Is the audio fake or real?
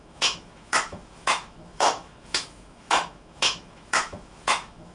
fake